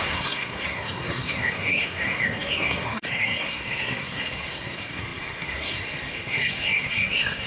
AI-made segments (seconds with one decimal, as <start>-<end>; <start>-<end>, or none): 0.0-7.5